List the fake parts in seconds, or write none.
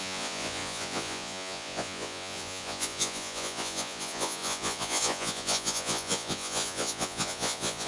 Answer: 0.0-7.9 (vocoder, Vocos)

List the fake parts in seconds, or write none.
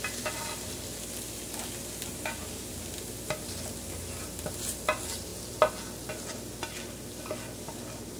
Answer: none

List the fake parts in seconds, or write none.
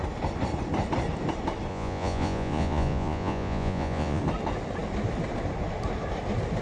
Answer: 1.7-4.2 (vocoder, Vocos)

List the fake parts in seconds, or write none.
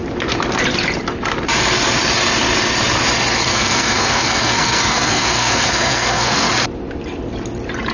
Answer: 3.5-6.5 (codec, SNAC)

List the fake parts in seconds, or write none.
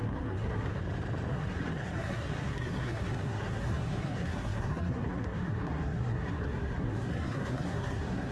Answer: 0.0-0.8 (codec, SNAC); 1.3-8.3